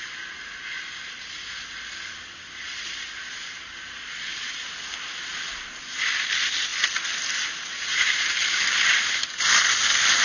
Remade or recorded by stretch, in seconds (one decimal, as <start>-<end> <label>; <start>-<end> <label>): 0.0-7.9 recorded; 7.9-9.2 remade; 9.2-10.2 recorded